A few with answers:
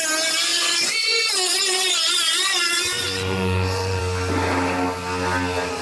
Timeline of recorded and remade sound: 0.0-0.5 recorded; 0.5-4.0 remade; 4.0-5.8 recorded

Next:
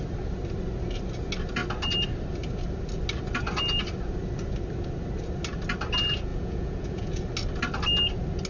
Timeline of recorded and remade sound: 0.0-6.3 recorded; 6.3-7.2 remade; 7.2-8.5 recorded

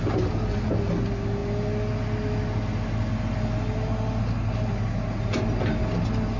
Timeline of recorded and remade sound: 0.0-6.4 recorded

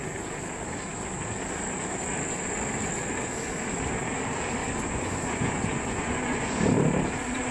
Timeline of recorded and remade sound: 0.0-4.6 recorded; 4.6-6.6 remade; 6.6-7.5 recorded

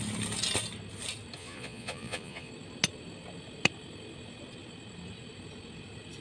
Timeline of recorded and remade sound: 0.0-1.4 recorded; 1.4-2.5 remade; 2.5-6.2 recorded

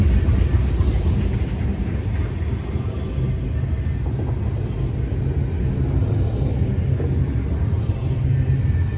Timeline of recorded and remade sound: 0.0-9.0 recorded

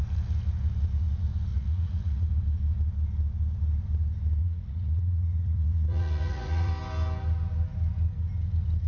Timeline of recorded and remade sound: 0.0-1.5 recorded; 1.5-2.3 remade; 2.3-4.4 recorded; 4.4-6.7 remade; 6.7-8.9 recorded

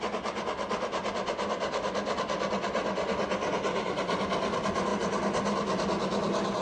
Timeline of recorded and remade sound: 0.0-6.6 recorded